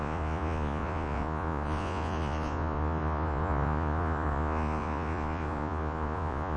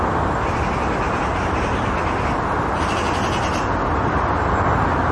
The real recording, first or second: second